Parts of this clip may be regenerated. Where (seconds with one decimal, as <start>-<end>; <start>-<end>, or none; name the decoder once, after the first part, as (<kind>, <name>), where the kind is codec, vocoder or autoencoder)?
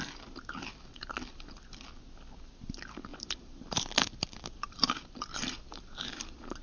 3.1-5.8 (vocoder, BigVGAN v2)